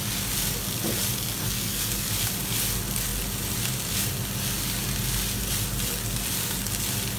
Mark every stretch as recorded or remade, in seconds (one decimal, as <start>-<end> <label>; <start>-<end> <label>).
0.0-1.4 recorded; 1.4-2.1 remade; 2.1-7.2 recorded